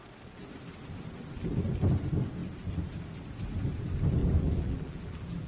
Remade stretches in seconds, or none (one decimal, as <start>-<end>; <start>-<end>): 4.2-5.5